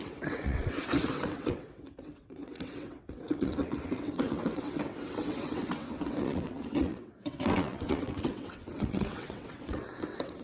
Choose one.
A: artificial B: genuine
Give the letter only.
A